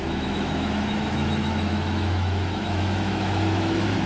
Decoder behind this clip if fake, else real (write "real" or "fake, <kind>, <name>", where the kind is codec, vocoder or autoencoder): fake, autoencoder, DAC-VAE